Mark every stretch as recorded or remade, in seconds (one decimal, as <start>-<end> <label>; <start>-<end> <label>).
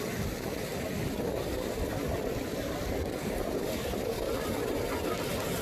0.0-5.6 recorded